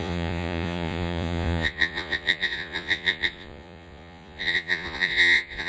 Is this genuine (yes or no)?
no